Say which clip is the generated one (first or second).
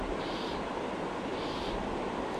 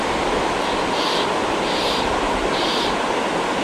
second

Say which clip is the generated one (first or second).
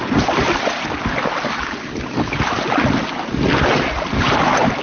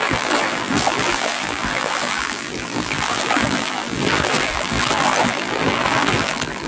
second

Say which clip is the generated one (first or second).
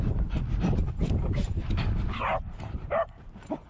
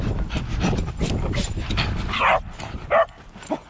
first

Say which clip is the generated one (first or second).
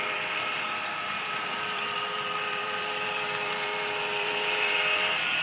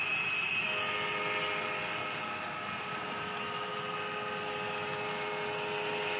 first